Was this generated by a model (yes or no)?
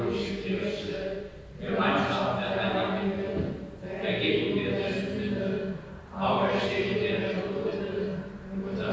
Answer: no